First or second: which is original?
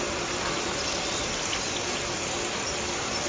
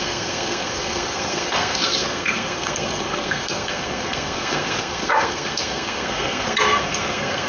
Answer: first